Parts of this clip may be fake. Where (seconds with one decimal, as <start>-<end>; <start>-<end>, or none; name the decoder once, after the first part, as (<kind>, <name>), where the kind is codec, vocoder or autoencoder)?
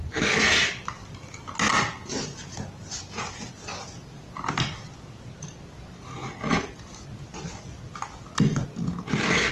none